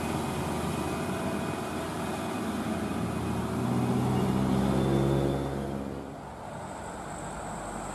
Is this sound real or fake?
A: real